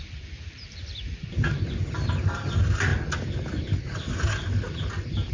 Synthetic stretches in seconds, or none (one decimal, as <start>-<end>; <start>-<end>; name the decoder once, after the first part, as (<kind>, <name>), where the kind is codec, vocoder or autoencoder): none